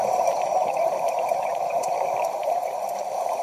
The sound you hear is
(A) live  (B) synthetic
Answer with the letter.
B